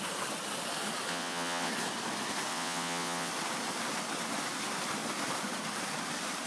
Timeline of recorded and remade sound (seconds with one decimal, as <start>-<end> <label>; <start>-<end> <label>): 0.0-1.1 recorded; 1.1-1.7 remade; 1.7-2.5 recorded; 2.5-3.3 remade; 3.3-6.5 recorded